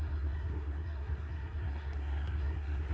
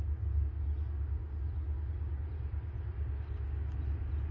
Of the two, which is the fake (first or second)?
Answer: first